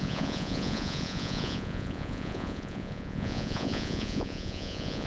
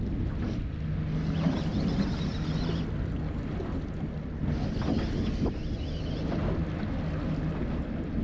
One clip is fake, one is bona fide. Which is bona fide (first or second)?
second